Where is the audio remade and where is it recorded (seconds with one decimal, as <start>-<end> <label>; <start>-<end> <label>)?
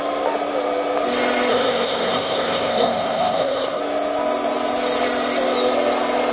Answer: 0.0-1.5 recorded; 1.5-3.8 remade; 3.8-6.3 recorded